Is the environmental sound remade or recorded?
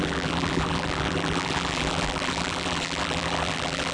remade